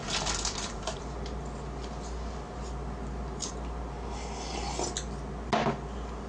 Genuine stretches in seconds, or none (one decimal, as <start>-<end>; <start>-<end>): 1.0-6.3

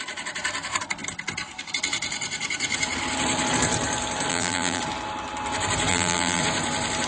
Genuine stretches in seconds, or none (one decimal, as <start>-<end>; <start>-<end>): 0.0-4.3; 4.8-5.9; 6.4-7.1

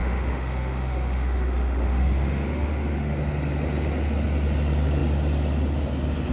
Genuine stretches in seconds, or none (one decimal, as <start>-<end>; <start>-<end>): 3.2-6.3

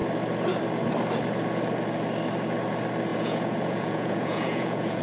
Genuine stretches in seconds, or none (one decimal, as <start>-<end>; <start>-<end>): 0.0-3.1

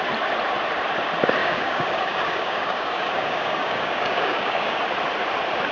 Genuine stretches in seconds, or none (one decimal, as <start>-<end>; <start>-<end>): 0.0-1.4; 4.8-5.7

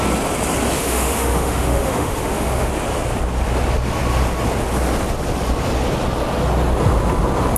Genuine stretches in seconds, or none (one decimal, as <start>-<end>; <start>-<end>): 0.0-0.8; 2.7-7.6

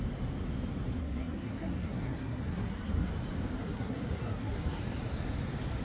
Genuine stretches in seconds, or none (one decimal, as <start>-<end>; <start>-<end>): 0.0-1.0; 3.1-3.6; 4.8-5.8

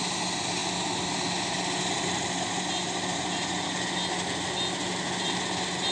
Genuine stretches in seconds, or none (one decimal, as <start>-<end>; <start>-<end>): 0.0-5.9